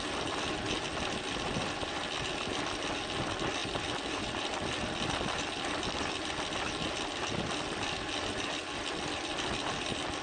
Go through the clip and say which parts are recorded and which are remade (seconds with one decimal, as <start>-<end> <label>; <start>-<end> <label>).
0.0-10.2 recorded